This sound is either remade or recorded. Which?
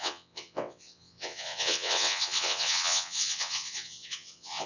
remade